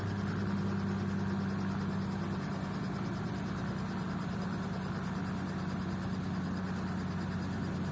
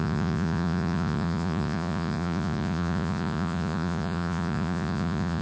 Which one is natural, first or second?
first